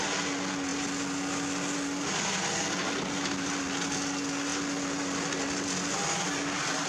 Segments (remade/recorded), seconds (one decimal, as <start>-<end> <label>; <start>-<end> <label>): 0.0-6.9 recorded